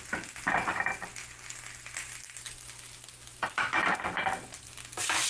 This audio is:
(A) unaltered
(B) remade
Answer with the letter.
A